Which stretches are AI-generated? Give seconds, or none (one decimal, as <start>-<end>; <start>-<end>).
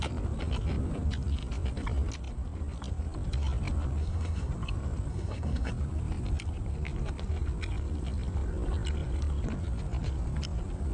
4.0-4.5; 5.1-5.7